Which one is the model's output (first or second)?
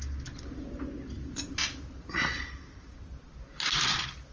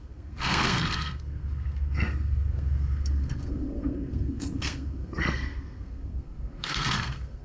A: second